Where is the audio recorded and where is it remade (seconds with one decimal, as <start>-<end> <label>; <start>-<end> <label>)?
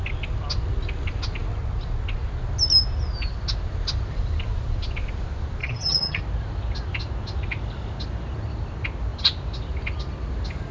0.0-5.6 recorded; 5.6-6.2 remade; 6.2-10.7 recorded